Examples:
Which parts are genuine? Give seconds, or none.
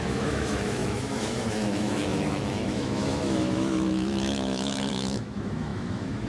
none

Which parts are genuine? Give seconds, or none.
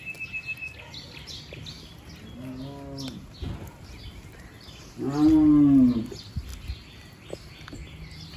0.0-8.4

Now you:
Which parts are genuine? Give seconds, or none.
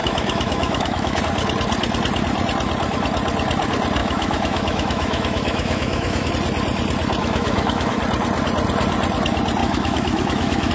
1.2-4.0; 6.3-7.2; 8.0-9.6